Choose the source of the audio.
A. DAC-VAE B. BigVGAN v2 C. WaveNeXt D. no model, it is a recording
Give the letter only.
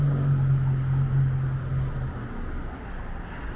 D